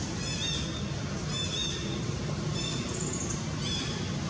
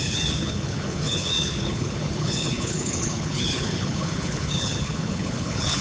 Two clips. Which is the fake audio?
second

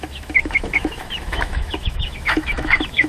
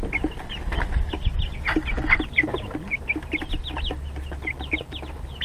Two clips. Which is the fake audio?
first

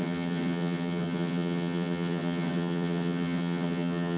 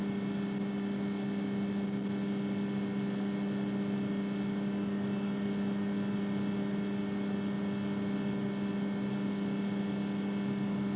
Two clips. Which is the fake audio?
first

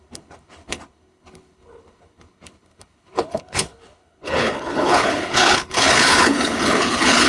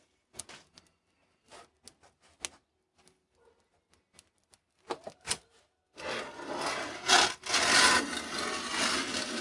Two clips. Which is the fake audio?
first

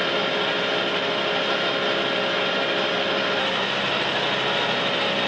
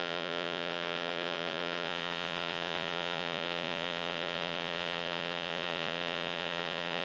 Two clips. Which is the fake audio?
second